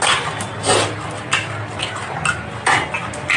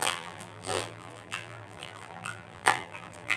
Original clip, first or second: first